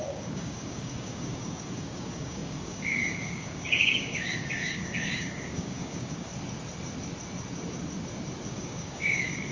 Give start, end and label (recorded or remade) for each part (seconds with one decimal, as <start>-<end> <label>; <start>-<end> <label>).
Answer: 0.0-6.3 remade; 6.3-8.5 recorded; 8.5-9.5 remade